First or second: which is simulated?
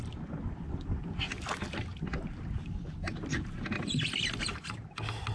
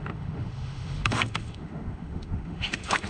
second